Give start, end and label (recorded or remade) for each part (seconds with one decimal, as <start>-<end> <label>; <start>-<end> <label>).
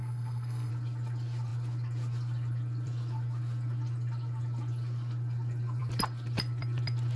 0.0-0.7 remade; 0.7-7.2 recorded